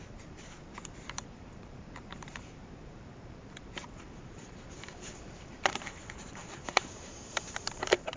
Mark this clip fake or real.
fake